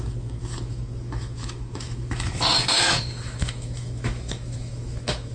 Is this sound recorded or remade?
remade